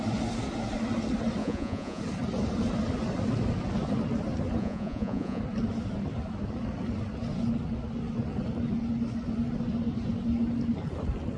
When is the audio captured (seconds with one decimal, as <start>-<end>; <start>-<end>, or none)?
0.0-1.4; 2.0-4.6; 5.4-11.4